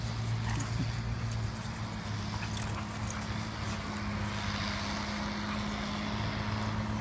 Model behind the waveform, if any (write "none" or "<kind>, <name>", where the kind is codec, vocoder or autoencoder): none